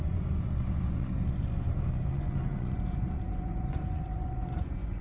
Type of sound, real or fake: fake